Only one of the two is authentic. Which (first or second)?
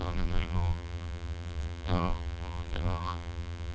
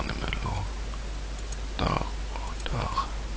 second